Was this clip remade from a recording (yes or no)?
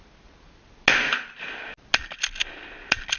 no